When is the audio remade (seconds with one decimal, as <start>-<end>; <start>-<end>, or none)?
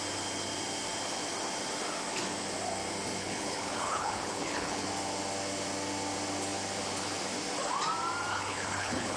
3.2-4.9; 8.3-9.2